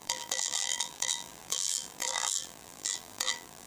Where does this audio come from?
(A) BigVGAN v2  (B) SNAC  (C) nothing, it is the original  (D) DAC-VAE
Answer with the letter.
A